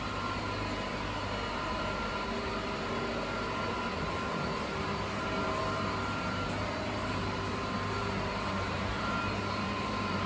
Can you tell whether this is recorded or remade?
remade